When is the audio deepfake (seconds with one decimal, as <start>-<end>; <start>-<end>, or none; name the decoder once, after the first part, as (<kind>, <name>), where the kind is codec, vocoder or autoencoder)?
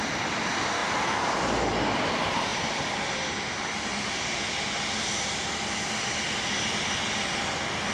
none